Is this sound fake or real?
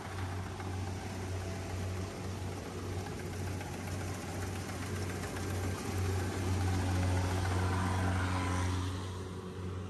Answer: real